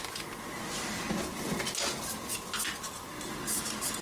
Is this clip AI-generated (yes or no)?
no